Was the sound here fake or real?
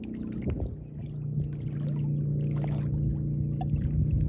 real